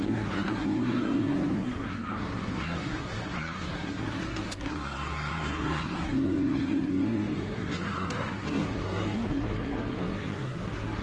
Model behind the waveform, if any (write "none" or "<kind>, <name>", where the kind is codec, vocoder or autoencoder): codec, SNAC